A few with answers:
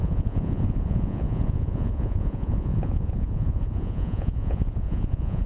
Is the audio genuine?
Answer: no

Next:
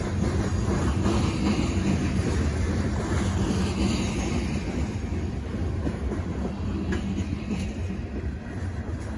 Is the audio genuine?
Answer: yes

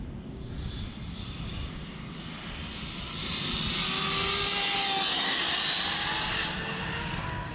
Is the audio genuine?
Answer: yes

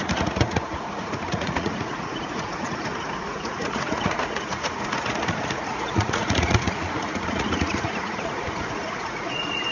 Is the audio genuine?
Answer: no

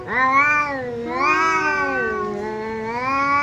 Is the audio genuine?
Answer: yes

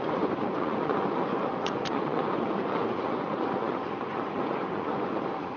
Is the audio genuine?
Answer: no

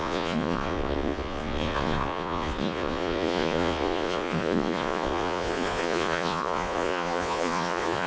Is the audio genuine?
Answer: no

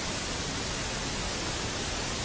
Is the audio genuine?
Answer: yes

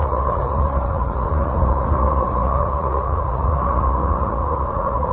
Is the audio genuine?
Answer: no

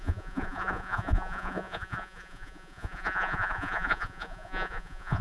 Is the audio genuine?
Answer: no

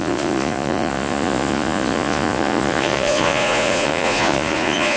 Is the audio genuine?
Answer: no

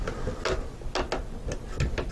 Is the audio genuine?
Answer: yes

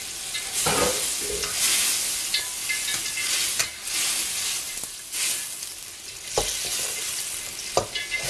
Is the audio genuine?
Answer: yes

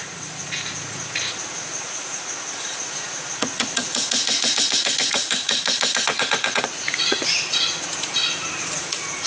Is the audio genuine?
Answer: no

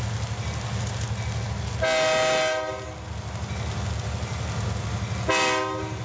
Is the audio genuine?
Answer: yes